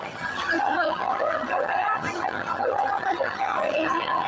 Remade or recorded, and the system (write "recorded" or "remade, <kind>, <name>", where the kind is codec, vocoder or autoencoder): remade, vocoder, HiFi-GAN